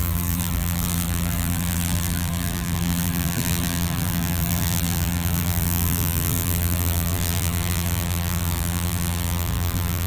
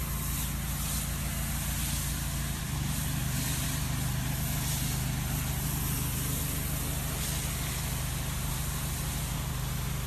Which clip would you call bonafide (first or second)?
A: second